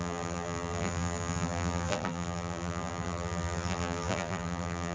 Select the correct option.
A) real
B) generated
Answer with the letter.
B